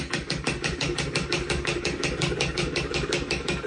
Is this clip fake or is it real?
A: fake